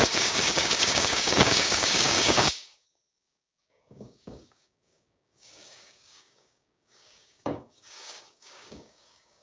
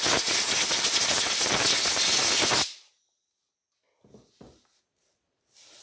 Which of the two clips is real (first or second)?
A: second